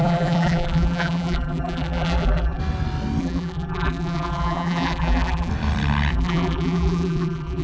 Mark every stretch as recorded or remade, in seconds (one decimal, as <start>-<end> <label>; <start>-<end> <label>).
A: 0.0-2.6 remade; 2.6-3.2 recorded; 3.2-5.5 remade; 5.5-6.1 recorded; 6.1-7.6 remade